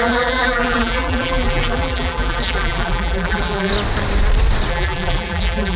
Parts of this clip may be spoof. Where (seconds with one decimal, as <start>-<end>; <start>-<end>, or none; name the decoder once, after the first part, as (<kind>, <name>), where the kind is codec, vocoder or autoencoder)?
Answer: 0.0-3.7 (vocoder, BigVGAN v2); 4.7-5.8